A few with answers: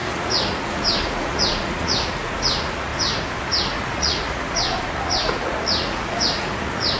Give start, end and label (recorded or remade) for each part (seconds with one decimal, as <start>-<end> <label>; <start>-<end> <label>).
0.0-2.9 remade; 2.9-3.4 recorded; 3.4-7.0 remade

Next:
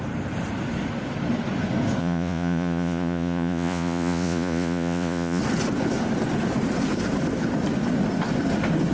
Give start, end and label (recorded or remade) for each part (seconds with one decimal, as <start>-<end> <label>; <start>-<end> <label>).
0.0-2.0 recorded; 2.0-5.4 remade; 5.4-8.9 recorded

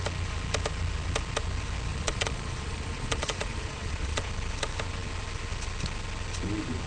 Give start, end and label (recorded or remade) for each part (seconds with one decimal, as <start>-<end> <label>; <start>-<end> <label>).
0.0-1.9 recorded; 1.9-4.3 remade; 4.3-6.9 recorded

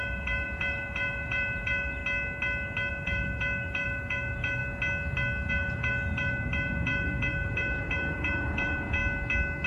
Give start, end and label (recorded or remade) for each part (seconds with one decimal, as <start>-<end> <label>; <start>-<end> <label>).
0.0-2.0 remade; 2.0-2.9 recorded; 2.9-4.6 remade; 4.6-5.5 recorded; 5.5-9.0 remade; 9.0-9.7 recorded